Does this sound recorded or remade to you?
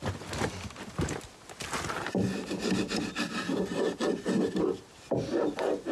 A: recorded